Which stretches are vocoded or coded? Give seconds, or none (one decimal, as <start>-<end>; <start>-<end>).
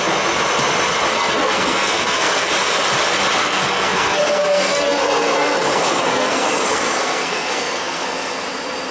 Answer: 1.1-2.5; 3.4-8.4